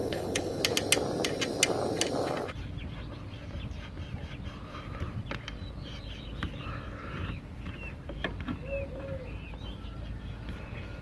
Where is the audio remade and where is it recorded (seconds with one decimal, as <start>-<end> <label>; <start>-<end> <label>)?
0.0-0.6 remade; 0.6-11.0 recorded